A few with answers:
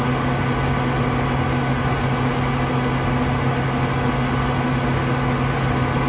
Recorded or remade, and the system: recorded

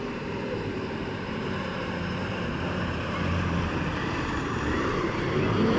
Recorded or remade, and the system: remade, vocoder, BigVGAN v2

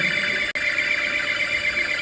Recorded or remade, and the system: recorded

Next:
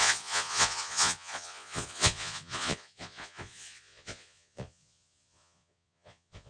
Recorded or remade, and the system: remade, vocoder, Vocos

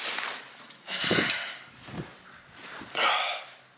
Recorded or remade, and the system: recorded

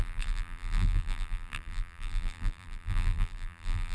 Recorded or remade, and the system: remade, vocoder, BigVGAN v2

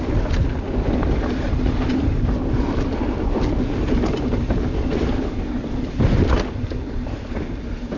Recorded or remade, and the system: recorded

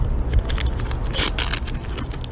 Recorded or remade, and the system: recorded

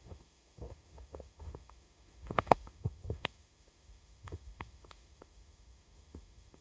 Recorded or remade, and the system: remade, autoencoder, DAC-VAE